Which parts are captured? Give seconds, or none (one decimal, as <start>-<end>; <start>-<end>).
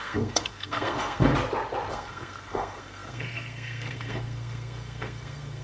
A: 1.3-1.9